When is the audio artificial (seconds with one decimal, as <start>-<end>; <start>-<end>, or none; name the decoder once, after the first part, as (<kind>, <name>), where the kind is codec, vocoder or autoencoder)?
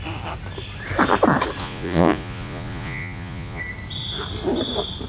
1.6-3.6 (vocoder, Vocos)